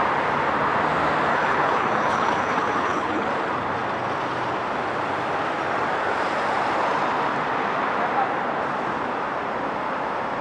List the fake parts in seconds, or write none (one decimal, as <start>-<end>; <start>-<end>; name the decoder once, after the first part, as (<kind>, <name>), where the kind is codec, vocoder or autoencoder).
1.3-3.3 (codec, HILCodec)

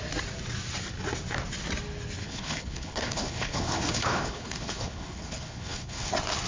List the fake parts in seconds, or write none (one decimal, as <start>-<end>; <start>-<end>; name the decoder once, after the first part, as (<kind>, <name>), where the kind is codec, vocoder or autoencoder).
2.2-6.1 (codec, HILCodec)

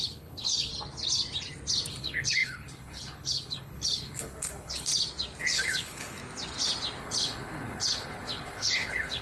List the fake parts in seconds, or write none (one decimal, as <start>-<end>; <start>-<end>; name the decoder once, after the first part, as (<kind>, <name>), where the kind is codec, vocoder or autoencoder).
0.0-0.7 (codec, HILCodec); 1.9-4.9; 5.4-6.2; 7.0-9.2

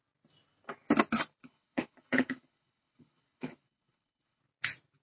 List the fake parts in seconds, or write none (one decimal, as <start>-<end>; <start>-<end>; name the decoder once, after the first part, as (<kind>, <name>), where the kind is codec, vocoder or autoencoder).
1.4-4.4 (codec, HILCodec)

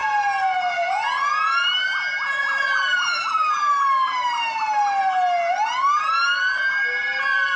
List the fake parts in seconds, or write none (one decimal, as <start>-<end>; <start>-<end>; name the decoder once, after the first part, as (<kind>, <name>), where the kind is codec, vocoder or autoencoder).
none

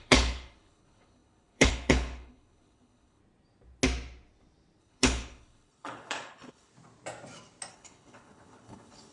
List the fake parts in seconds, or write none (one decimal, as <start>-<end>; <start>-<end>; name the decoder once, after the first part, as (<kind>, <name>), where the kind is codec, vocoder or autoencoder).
0.0-3.2 (codec, HILCodec); 4.8-6.7; 7.7-9.1

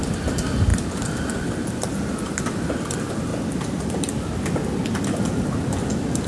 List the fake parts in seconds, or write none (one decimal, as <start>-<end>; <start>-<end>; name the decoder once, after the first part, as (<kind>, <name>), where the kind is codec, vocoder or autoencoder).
none